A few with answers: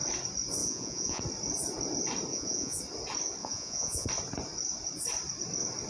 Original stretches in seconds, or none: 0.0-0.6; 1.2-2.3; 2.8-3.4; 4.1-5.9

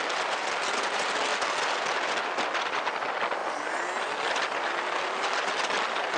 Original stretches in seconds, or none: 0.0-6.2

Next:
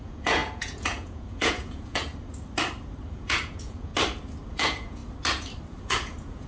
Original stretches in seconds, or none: 2.1-3.0; 3.9-4.5; 5.0-5.8